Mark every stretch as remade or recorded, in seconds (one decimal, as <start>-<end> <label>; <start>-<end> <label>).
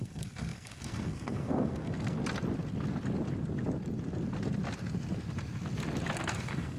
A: 0.0-2.2 remade; 2.2-6.3 recorded; 6.3-6.8 remade